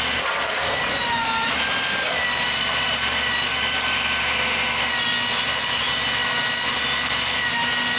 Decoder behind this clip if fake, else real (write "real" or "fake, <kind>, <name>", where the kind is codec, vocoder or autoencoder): real